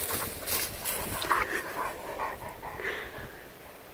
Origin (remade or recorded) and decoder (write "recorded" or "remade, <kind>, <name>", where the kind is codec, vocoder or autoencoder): recorded